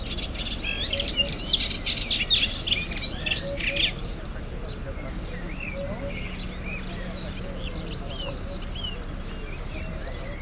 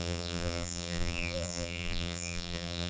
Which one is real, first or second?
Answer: first